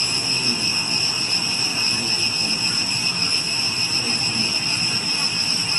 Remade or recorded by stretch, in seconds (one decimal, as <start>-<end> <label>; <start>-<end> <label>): 0.0-0.4 remade; 0.4-1.0 recorded; 1.0-1.7 remade; 1.7-2.5 recorded; 2.5-5.8 remade